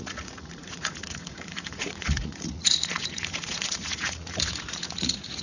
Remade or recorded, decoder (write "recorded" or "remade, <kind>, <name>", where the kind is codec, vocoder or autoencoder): remade, vocoder, Vocos